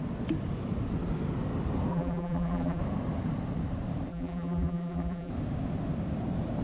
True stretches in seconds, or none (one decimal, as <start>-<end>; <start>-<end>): 0.0-1.9; 2.8-4.1; 5.3-6.6